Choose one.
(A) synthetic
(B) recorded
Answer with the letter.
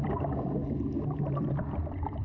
B